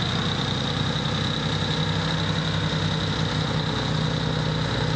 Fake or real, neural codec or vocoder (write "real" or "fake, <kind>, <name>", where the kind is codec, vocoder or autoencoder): real